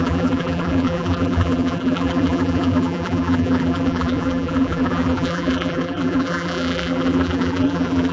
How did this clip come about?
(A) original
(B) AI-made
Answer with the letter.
B